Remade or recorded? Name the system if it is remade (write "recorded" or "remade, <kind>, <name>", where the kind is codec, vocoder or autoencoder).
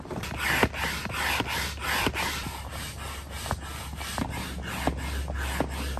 recorded